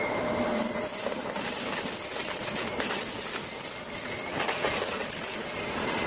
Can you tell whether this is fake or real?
real